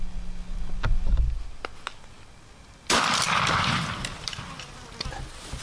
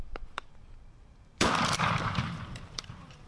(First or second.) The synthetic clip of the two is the second